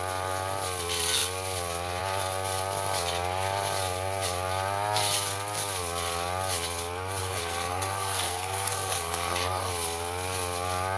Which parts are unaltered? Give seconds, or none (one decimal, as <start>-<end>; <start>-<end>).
0.0-7.2; 9.7-11.0